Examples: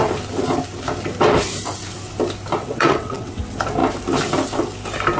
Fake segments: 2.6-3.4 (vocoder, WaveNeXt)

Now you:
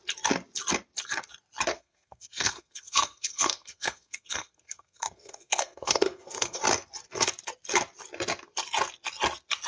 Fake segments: 1.7-6.6 (codec, SNAC)

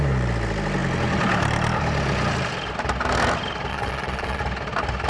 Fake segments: 3.7-4.4 (vocoder, Vocos)

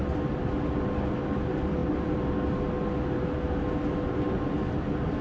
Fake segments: none

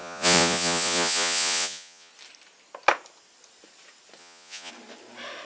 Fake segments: 0.0-2.1 (vocoder, Vocos); 4.2-4.7

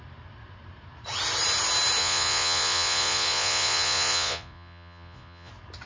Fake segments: 2.0-5.5 (vocoder, Vocos)

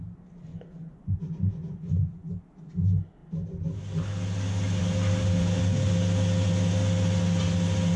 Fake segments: 0.5-2.3 (vocoder, Vocos)

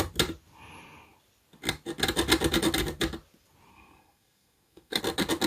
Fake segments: 3.7-5.0 (codec, SNAC)